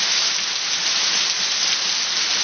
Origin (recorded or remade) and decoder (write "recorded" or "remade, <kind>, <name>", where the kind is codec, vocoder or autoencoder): recorded